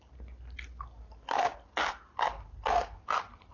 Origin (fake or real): real